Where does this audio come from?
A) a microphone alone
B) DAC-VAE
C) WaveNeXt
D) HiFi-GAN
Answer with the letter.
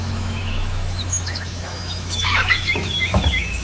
B